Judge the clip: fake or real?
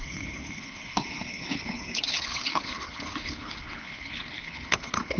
fake